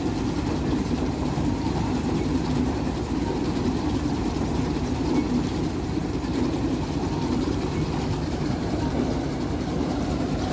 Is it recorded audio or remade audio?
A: remade